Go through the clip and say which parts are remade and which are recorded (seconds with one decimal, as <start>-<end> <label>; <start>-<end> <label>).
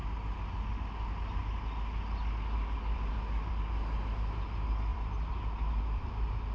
0.0-4.9 recorded; 4.9-6.1 remade; 6.1-6.5 recorded